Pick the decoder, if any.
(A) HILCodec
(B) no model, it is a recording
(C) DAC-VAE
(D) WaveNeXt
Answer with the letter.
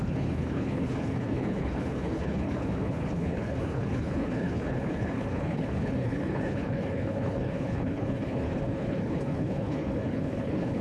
A